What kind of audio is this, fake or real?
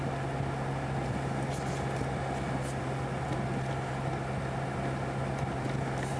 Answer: real